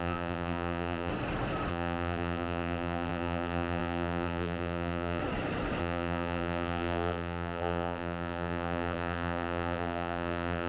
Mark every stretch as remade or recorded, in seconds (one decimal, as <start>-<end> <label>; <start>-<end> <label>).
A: 0.0-1.1 remade; 1.1-1.7 recorded; 1.7-5.2 remade; 5.2-5.8 recorded; 5.8-10.7 remade